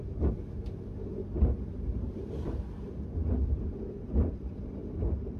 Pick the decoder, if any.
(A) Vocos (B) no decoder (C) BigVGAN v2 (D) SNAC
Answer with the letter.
C